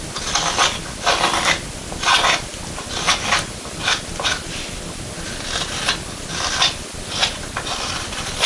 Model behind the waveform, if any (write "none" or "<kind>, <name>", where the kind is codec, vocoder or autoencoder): none